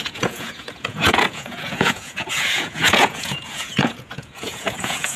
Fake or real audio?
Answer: fake